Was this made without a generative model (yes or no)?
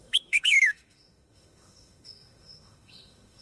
no